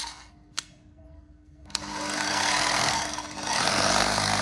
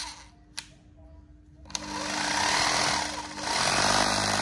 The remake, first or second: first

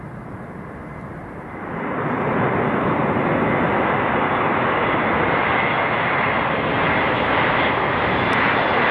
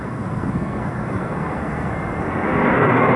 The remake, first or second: second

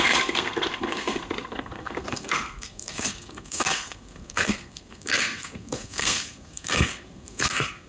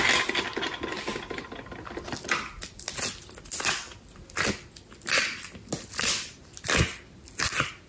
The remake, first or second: first